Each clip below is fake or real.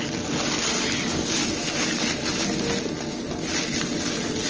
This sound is real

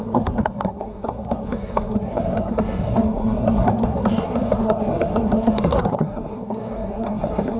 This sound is fake